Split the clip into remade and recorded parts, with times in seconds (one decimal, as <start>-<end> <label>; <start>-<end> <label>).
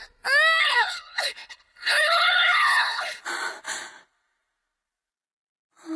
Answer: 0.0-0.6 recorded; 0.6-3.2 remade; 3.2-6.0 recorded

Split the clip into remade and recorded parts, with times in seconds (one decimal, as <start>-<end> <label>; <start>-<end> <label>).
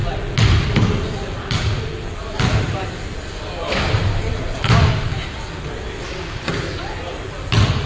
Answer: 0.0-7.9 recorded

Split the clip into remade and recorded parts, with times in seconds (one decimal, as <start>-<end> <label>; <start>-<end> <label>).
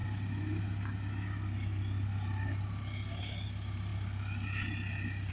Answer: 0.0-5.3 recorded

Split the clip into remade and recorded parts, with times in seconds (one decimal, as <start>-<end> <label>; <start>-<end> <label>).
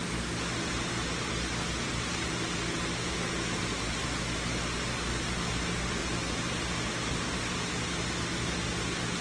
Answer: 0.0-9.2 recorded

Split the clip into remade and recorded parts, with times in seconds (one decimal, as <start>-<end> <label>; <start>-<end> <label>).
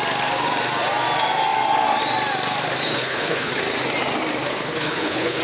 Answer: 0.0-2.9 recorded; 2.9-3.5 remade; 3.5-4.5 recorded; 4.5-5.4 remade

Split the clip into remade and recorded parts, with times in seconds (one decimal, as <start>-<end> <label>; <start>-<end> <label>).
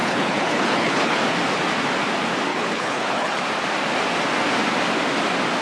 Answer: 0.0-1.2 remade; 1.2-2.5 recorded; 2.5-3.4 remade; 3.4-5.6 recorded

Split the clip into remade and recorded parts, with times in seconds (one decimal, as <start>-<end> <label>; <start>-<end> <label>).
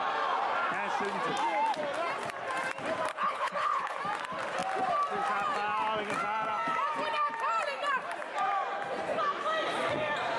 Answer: 0.0-3.1 recorded; 3.1-4.0 remade; 4.0-10.4 recorded